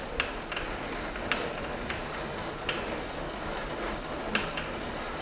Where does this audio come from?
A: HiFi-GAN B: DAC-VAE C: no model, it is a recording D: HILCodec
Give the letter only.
C